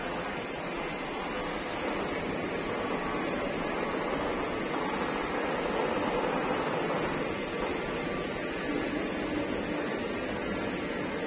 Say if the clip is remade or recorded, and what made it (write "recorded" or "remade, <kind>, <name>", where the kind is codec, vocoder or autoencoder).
recorded